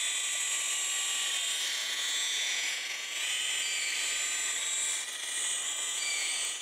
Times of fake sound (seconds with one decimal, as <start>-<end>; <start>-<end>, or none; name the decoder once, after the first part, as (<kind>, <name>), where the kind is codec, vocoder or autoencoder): 1.8-3.4 (vocoder, Vocos); 5.9-6.6